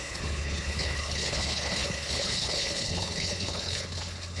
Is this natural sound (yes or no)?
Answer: no